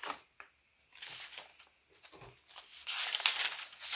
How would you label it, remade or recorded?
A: recorded